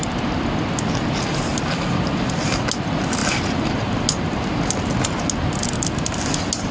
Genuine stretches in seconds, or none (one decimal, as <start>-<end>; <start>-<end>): 0.0-3.2; 3.9-6.7